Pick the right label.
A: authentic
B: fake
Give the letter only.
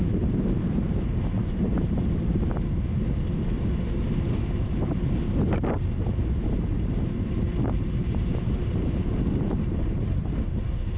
B